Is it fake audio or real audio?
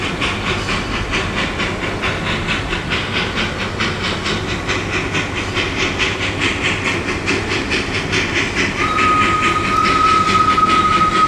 real